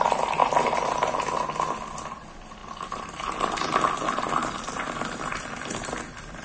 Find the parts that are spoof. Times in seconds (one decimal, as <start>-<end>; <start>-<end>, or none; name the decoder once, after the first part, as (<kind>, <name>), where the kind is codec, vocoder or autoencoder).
0.0-0.4 (vocoder, BigVGAN v2); 1.7-6.4